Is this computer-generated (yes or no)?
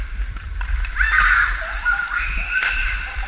yes